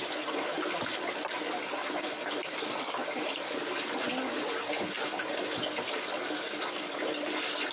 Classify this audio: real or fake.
real